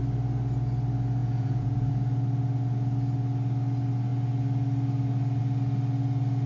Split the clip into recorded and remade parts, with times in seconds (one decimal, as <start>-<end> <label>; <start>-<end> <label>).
0.0-1.2 recorded; 1.2-1.9 remade; 1.9-6.5 recorded